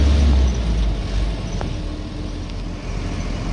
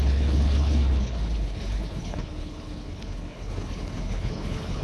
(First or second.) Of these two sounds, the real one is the first